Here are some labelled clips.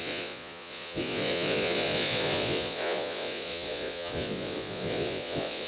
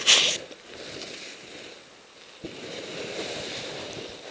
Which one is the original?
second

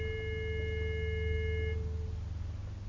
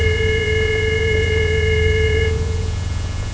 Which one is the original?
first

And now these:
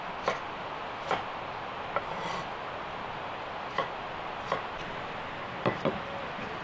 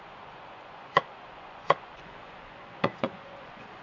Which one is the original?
first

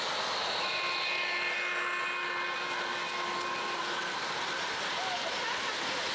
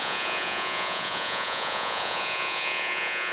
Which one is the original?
first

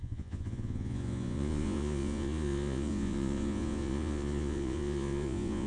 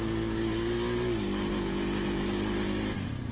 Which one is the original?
second